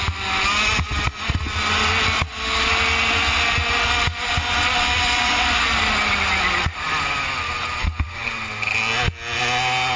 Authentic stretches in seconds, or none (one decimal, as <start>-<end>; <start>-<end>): 0.0-10.0